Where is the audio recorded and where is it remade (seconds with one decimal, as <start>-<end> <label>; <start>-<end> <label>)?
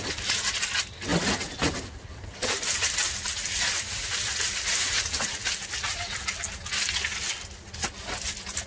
0.0-8.7 recorded